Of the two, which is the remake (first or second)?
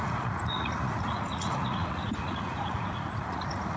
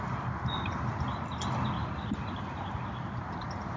first